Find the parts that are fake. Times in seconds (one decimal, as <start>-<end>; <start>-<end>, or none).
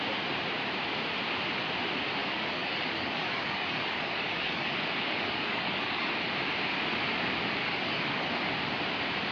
2.2-6.1; 7.6-8.3